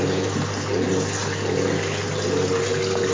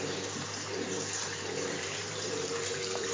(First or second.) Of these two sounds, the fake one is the second